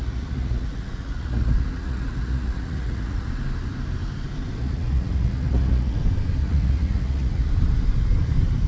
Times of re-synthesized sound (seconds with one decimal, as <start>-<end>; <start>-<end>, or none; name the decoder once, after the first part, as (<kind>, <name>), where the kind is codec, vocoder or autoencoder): 0.0-3.3 (vocoder, Vocos); 4.6-6.0; 6.4-7.5